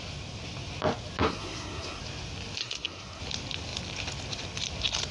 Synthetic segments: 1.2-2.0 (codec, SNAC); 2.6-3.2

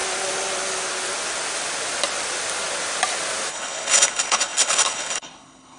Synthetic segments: 3.5-5.8 (codec, HILCodec)

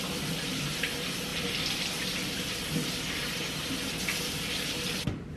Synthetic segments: none

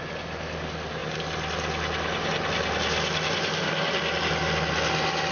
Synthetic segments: none